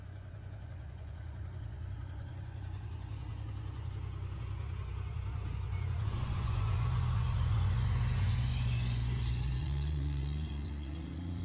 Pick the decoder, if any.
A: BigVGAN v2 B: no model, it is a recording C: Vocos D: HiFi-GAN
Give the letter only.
C